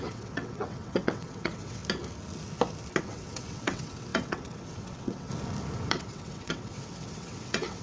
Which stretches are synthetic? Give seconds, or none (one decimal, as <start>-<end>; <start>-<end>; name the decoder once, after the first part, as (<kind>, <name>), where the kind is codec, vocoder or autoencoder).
0.0-1.8 (vocoder, WaveNeXt); 3.0-5.3; 5.9-7.8